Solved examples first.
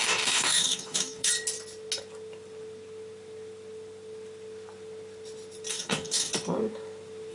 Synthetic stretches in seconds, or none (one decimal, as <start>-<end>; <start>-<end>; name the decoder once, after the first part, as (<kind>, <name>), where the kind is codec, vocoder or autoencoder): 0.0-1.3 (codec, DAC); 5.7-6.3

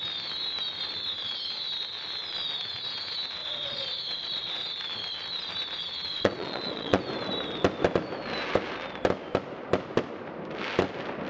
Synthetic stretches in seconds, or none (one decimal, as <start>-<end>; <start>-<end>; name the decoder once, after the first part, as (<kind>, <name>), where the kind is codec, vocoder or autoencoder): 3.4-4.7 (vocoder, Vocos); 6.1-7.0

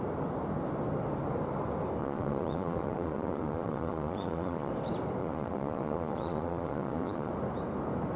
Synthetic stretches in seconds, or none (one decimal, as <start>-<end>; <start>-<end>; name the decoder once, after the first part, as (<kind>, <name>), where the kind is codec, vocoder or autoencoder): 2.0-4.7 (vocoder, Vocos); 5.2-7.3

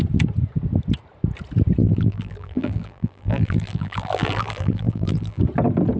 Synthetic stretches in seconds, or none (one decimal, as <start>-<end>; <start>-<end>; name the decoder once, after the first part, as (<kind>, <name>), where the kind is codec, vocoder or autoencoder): 1.8-5.4 (vocoder, BigVGAN v2)

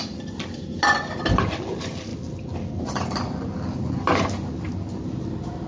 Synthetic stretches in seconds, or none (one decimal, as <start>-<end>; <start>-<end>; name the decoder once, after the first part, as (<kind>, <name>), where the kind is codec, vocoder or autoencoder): none